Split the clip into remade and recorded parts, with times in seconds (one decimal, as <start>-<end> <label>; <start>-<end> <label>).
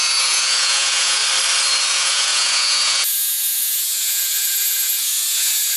0.0-1.2 remade; 1.2-1.9 recorded; 1.9-5.8 remade